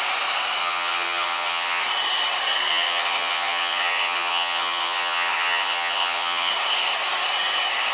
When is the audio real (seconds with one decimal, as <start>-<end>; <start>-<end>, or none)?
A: 0.0-0.6; 1.8-2.7; 6.5-7.9